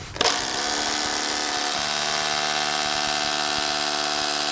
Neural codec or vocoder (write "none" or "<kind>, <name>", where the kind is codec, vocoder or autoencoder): none